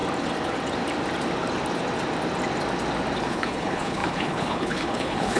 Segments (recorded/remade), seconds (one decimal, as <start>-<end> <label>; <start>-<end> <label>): 0.0-3.2 recorded; 3.2-5.4 remade